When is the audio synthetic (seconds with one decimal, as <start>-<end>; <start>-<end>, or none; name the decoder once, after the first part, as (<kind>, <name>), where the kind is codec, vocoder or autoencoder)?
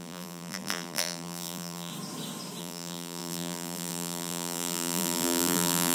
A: 0.0-1.9 (vocoder, BigVGAN v2); 2.6-5.9